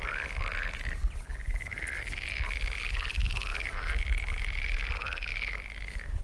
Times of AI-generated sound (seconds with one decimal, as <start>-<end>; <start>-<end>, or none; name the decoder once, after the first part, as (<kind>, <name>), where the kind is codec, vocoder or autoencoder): none